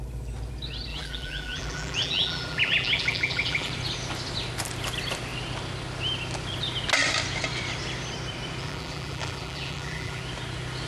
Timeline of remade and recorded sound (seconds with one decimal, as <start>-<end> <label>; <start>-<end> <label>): 0.0-0.9 recorded; 0.9-3.7 remade; 3.7-8.6 recorded; 8.6-10.2 remade; 10.2-10.9 recorded